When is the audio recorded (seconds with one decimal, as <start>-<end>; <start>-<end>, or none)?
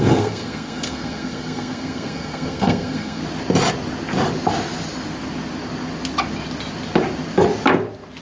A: 3.2-8.2